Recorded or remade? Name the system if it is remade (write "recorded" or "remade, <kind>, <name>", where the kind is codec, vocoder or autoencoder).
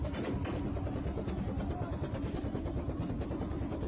recorded